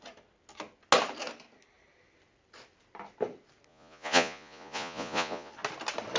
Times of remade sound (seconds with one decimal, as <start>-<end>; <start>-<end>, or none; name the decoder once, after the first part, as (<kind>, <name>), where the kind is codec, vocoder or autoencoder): 3.7-5.5 (vocoder, Vocos)